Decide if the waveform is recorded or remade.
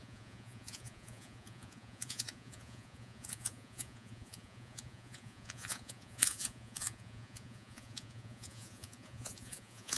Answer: remade